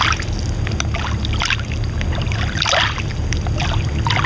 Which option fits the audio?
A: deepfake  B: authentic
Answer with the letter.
B